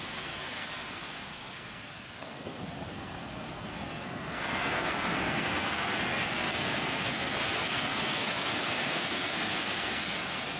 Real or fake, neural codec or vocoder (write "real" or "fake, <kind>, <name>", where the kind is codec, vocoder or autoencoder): fake, codec, SNAC